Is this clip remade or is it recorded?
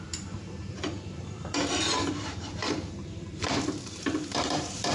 remade